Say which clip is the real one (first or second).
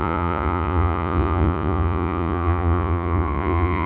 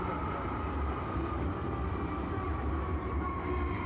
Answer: second